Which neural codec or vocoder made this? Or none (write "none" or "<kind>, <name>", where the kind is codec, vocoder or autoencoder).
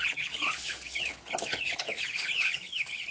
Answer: codec, HILCodec